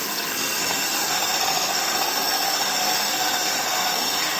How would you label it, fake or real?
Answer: fake